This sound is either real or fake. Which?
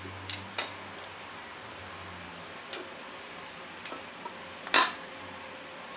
real